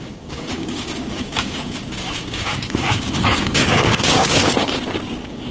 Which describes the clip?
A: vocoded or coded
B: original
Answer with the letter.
A